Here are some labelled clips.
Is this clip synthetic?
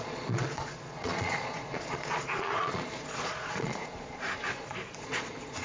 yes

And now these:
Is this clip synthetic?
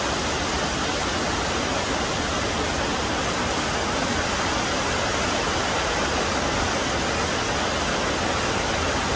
no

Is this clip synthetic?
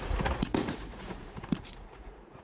yes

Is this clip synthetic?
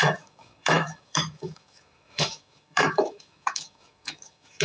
yes